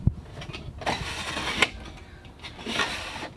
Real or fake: real